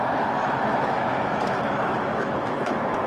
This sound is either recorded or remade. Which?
remade